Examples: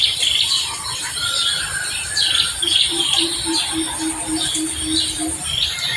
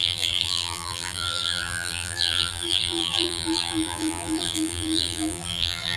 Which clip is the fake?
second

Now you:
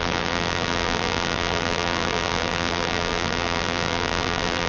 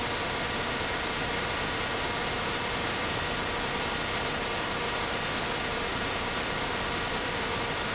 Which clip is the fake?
first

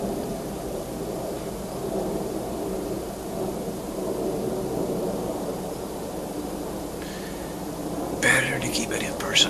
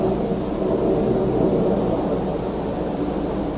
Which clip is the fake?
first